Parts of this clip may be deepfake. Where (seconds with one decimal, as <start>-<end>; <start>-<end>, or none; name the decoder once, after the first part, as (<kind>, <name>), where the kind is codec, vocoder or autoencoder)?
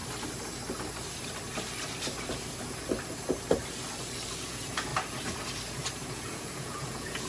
4.4-4.9 (vocoder, Vocos); 6.1-7.3